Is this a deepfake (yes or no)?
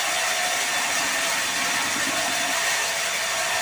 no